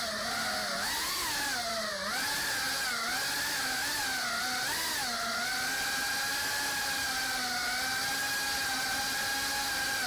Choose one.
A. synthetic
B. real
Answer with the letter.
B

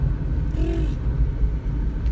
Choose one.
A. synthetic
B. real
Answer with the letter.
B